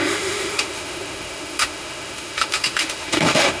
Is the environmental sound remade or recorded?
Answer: remade